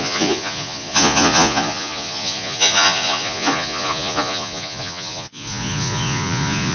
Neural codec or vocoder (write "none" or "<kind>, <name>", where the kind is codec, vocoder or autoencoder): vocoder, Vocos